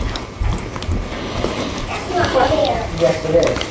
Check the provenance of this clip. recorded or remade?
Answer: recorded